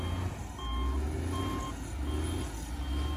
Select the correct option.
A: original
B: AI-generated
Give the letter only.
A